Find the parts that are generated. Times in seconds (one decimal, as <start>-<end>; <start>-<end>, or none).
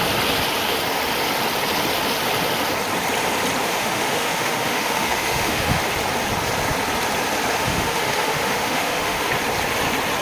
3.6-5.8; 7.5-9.3